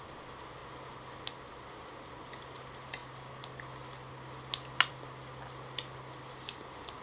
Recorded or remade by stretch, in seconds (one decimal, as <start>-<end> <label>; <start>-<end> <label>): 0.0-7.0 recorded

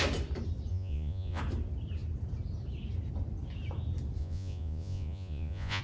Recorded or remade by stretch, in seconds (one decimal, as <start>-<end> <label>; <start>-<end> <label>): 0.0-0.7 recorded; 0.7-1.4 remade; 1.4-4.2 recorded; 4.2-5.8 remade

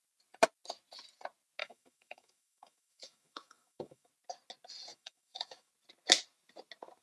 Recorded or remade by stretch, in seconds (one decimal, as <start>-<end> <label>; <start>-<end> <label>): 0.0-1.6 recorded; 1.6-4.1 remade; 4.1-4.9 recorded; 4.9-5.7 remade; 5.7-7.0 recorded